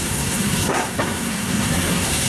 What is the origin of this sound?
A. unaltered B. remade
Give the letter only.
B